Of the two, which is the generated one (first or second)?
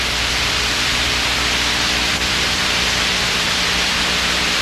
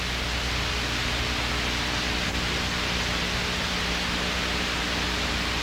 first